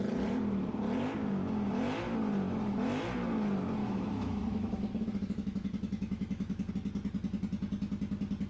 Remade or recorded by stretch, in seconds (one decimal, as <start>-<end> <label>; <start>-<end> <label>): 0.0-3.8 recorded; 3.8-6.7 remade; 6.7-8.5 recorded